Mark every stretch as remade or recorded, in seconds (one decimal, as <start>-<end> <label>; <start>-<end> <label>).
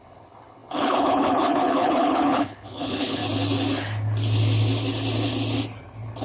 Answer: 0.0-3.2 remade; 3.2-6.2 recorded